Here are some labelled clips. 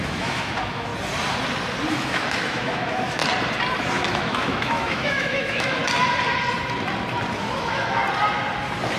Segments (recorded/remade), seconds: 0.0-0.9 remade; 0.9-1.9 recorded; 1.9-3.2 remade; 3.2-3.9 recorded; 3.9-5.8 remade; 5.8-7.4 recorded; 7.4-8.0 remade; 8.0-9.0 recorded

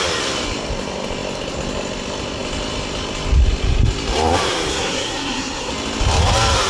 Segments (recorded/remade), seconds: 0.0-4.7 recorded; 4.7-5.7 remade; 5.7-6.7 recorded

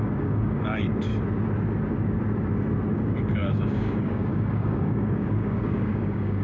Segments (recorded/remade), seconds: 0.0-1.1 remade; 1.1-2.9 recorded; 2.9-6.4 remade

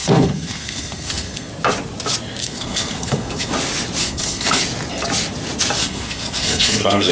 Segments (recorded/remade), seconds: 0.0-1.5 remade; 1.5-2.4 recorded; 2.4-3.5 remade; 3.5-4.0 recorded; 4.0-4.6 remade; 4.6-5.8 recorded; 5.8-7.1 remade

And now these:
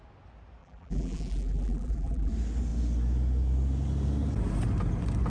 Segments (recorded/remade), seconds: 0.0-0.6 recorded; 0.6-2.3 remade; 2.3-5.3 recorded